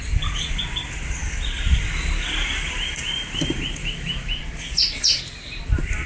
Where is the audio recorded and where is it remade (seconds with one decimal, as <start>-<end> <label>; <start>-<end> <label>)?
0.0-3.8 recorded; 3.8-4.4 remade; 4.4-6.1 recorded